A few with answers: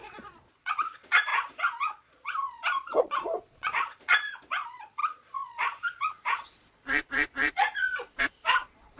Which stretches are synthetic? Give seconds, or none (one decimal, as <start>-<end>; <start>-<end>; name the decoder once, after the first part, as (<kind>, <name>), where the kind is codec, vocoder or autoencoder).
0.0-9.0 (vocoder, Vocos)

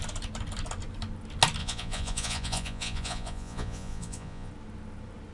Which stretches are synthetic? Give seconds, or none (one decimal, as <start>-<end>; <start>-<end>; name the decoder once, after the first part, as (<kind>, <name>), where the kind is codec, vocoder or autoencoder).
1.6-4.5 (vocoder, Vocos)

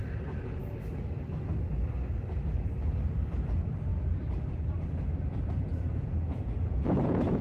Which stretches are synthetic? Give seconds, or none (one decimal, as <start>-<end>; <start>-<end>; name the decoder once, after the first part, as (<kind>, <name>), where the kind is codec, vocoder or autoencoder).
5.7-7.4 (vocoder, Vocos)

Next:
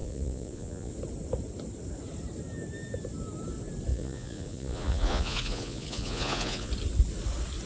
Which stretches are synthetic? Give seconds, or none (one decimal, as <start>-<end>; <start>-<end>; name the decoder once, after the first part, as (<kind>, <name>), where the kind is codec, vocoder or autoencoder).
0.0-0.9 (vocoder, Vocos); 3.9-6.7

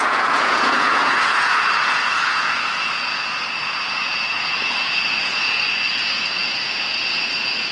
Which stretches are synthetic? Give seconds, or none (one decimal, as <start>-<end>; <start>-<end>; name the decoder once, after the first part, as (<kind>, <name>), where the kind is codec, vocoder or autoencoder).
0.0-7.7 (vocoder, Vocos)

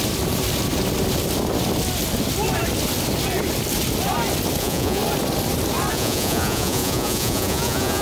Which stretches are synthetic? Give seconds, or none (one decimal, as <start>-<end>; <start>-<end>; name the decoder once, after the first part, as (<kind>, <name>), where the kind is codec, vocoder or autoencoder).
4.6-5.0 (vocoder, Vocos); 5.9-8.0

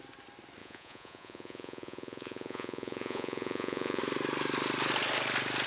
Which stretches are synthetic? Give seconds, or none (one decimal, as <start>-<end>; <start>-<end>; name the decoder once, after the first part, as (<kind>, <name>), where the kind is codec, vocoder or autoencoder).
0.6-4.0 (vocoder, Vocos)